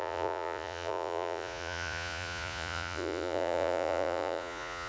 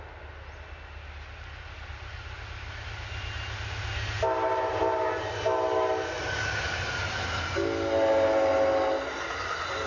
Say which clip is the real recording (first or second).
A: second